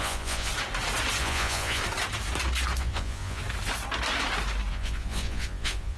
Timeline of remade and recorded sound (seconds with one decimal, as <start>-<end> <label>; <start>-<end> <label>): 0.0-0.5 remade; 0.5-1.2 recorded; 1.2-1.8 remade; 1.8-2.8 recorded; 2.8-3.4 remade; 3.4-4.7 recorded; 4.7-6.0 remade

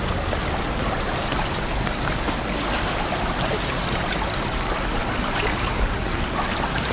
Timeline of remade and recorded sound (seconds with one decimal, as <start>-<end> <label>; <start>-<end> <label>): 0.0-6.9 recorded